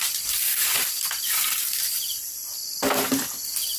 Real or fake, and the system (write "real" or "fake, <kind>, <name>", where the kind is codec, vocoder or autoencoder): real